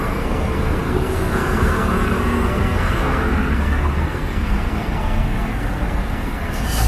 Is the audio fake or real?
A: fake